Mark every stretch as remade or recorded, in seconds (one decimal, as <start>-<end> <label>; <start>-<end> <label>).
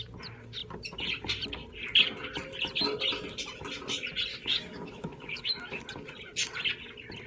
0.0-4.3 recorded; 4.3-5.8 remade; 5.8-7.3 recorded